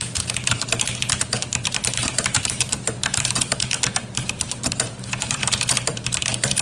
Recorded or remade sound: remade